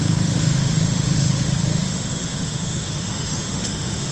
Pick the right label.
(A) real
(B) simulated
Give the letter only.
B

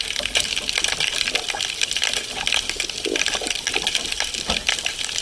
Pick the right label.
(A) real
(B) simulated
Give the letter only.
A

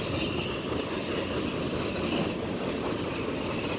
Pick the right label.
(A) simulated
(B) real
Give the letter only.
B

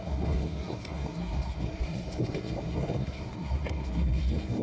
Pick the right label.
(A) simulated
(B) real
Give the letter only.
A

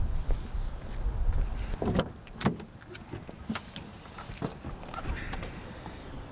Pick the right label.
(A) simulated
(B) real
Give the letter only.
B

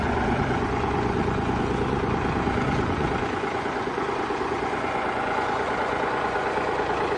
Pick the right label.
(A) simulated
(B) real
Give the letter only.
A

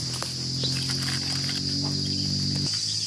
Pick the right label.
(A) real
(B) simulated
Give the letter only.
A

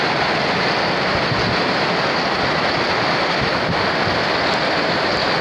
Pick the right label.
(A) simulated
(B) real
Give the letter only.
B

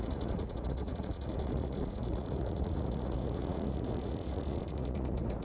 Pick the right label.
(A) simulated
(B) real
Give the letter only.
A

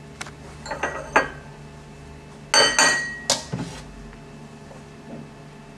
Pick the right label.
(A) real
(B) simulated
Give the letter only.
A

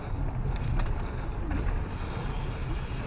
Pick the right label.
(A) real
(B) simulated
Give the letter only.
A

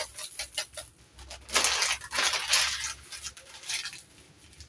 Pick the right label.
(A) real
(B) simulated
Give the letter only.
A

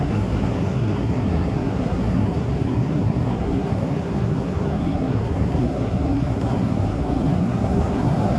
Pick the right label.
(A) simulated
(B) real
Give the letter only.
A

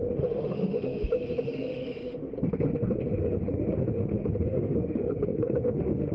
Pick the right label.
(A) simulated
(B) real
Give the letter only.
A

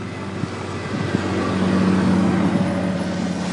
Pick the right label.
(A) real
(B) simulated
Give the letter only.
A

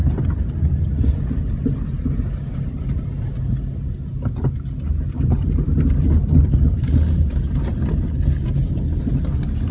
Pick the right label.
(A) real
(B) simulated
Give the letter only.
A